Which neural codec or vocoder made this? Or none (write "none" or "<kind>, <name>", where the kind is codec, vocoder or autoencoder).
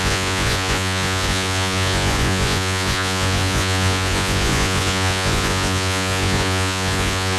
vocoder, Vocos